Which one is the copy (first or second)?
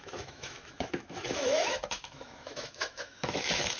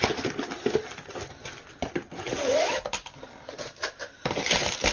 first